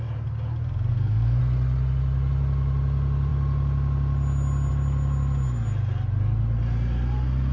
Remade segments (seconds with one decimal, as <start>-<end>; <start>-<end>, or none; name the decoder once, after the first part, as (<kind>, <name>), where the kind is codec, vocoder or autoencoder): 0.9-1.4 (codec, SNAC)